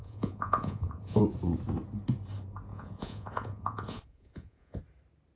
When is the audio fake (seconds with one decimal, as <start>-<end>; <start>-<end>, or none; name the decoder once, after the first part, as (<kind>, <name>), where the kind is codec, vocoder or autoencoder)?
0.0-1.2 (vocoder, Vocos); 2.7-4.8